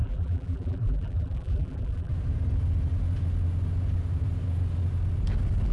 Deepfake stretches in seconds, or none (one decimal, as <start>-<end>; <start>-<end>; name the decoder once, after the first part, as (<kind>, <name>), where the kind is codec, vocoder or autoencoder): 0.0-2.1 (vocoder, BigVGAN v2)